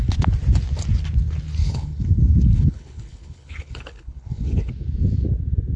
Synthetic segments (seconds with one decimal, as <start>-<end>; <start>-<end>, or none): 1.6-4.7